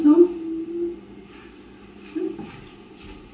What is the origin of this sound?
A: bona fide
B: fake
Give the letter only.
A